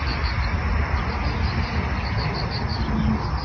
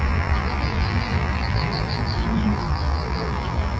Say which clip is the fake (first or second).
second